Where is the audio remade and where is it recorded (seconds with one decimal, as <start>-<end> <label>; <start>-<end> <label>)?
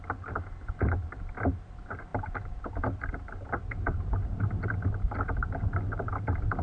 0.0-6.6 recorded